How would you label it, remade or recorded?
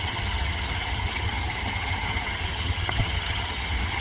remade